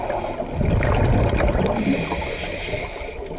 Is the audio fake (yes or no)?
no